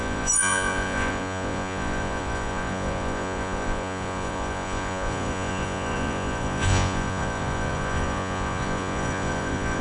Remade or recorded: remade